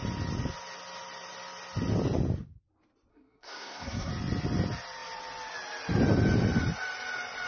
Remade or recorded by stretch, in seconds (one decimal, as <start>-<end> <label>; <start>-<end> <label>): 0.0-3.1 recorded; 3.1-4.1 remade; 4.1-7.5 recorded